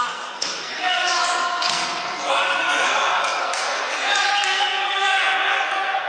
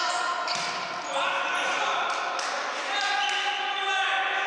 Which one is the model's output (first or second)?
first